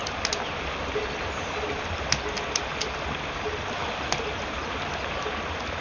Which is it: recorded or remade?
recorded